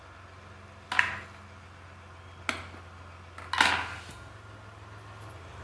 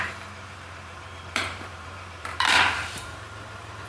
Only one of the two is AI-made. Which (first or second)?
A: second